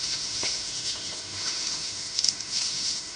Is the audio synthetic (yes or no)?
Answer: yes